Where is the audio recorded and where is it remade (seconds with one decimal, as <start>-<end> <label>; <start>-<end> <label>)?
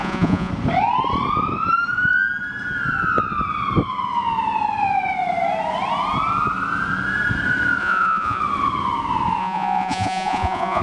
0.0-0.5 remade; 0.5-7.8 recorded; 7.8-8.4 remade; 8.4-9.4 recorded; 9.4-10.8 remade